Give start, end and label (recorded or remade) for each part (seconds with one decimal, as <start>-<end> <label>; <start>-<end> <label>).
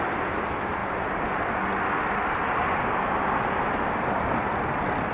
0.0-5.1 recorded